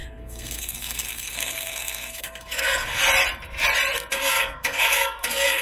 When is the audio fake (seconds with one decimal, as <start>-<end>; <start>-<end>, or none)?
0.0-3.0; 4.1-5.6

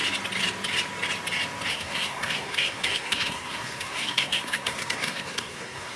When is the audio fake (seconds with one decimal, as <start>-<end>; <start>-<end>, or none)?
1.7-6.0

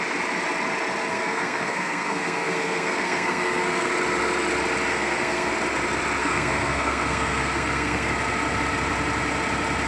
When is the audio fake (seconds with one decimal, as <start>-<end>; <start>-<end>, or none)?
1.1-3.9; 4.9-5.5; 6.2-8.1

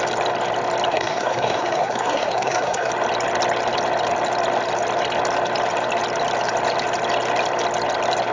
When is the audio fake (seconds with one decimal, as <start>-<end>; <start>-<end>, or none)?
0.9-2.9

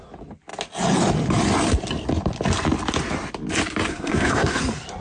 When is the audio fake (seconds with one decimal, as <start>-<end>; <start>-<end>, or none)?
3.9-4.6

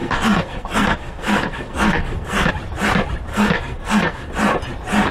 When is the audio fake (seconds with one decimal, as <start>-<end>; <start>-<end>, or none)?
0.0-2.5; 3.3-4.3